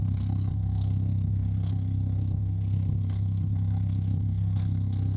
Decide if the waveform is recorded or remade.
remade